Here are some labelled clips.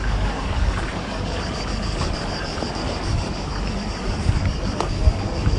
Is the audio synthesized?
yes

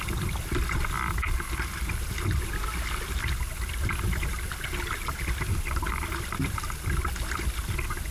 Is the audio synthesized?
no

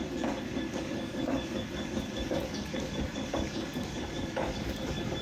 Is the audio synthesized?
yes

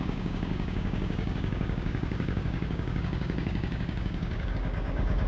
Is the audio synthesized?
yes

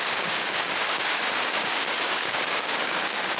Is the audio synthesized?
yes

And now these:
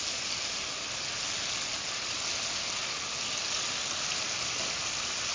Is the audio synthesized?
no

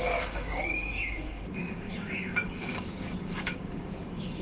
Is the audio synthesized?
yes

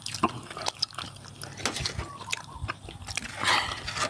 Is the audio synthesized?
no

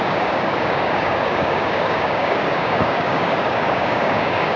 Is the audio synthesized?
yes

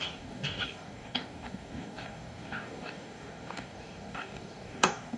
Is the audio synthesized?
yes